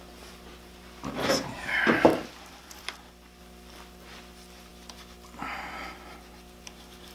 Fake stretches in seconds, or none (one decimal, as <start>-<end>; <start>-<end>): 2.1-3.4

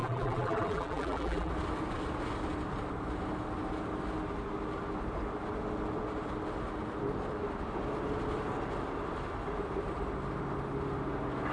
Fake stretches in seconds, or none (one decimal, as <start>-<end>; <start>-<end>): 0.0-1.5